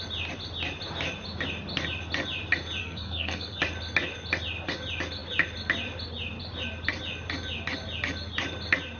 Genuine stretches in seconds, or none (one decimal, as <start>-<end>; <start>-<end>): 0.0-2.8; 3.6-9.0